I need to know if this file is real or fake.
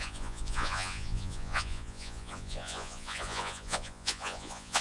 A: fake